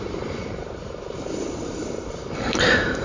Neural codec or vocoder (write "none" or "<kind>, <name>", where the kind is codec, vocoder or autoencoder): vocoder, BigVGAN v2